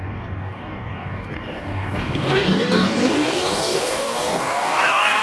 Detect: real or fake fake